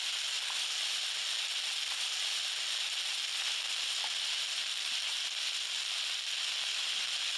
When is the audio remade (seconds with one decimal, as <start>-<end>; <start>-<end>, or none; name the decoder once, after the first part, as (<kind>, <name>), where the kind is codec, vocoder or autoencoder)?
3.3-4.1 (vocoder, BigVGAN v2)